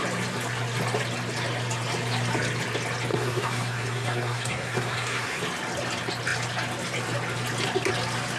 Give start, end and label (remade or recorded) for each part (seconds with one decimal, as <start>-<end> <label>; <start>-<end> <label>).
0.0-3.1 recorded; 3.1-5.4 remade; 5.4-8.4 recorded